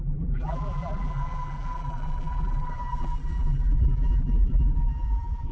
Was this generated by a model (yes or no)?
yes